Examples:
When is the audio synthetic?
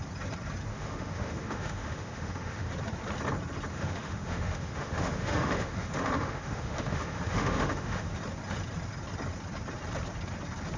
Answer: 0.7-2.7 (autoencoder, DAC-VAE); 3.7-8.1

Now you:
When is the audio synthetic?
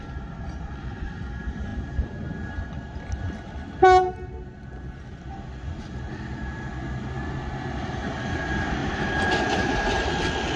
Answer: 8.8-10.1 (vocoder, BigVGAN v2)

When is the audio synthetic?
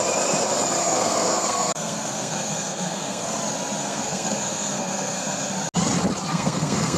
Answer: 0.8-3.4 (codec, SNAC); 3.8-5.5; 6.3-7.0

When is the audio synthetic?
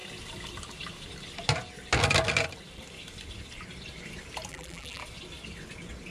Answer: 4.5-5.0 (vocoder, BigVGAN v2)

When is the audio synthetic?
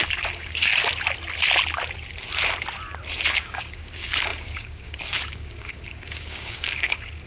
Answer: 0.0-0.7 (codec, DAC); 3.3-7.3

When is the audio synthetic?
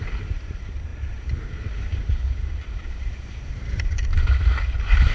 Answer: 0.0-5.1 (vocoder, BigVGAN v2)